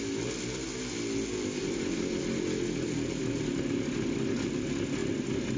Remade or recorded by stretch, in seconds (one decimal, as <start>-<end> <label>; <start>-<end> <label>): 0.0-5.6 recorded